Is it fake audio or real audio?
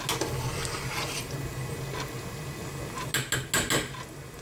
real